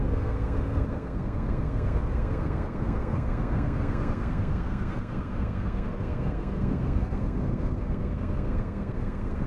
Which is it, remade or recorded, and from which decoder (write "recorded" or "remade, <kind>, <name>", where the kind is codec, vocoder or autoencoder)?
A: remade, codec, SNAC